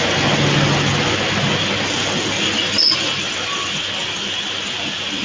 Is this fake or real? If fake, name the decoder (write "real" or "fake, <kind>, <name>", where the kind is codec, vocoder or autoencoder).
real